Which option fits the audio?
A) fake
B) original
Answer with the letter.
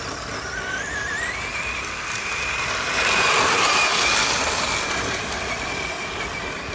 B